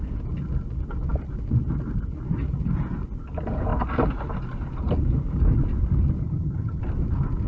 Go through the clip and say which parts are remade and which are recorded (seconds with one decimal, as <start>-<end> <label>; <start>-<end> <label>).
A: 0.0-6.2 recorded; 6.2-6.8 remade; 6.8-7.5 recorded